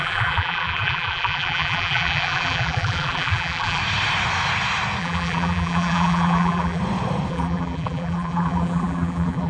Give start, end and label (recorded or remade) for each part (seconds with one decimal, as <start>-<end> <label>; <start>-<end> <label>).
0.0-3.8 remade; 3.8-5.0 recorded; 5.0-6.8 remade; 6.8-7.3 recorded; 7.3-9.5 remade